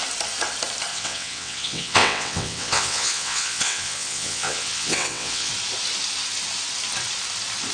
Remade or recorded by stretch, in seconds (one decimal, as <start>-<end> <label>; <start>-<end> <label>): 0.0-0.9 recorded; 0.9-5.5 remade; 5.5-7.7 recorded